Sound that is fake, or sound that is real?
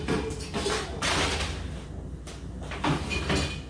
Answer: real